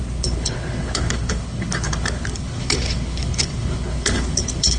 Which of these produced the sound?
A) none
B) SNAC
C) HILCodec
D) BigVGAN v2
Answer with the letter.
C